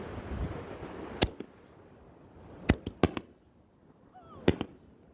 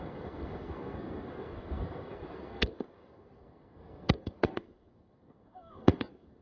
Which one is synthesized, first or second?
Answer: second